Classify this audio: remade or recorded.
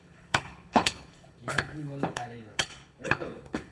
remade